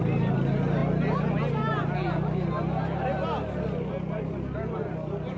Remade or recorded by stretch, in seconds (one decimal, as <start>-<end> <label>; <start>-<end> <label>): 0.0-5.4 recorded